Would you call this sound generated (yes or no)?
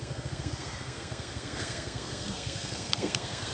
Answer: yes